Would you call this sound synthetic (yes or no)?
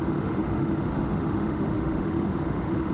yes